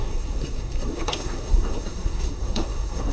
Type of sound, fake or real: fake